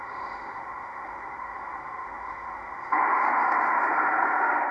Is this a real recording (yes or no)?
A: no